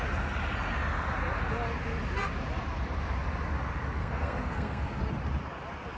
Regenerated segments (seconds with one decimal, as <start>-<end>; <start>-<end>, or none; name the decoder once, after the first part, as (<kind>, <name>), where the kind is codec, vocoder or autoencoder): 4.0-5.0 (codec, SNAC)